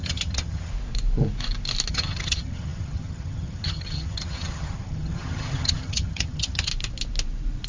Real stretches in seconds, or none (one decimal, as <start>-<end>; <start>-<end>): 0.7-1.9; 6.7-7.7